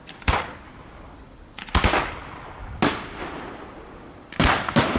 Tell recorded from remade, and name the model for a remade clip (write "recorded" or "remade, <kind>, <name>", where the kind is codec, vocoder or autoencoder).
recorded